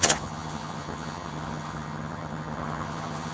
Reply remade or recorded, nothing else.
remade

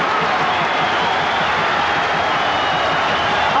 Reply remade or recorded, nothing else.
recorded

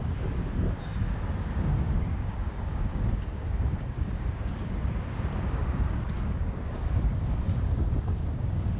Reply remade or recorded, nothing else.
remade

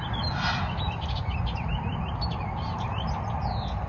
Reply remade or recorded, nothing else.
recorded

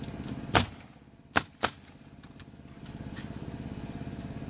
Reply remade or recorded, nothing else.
recorded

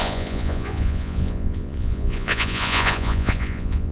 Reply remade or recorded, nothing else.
remade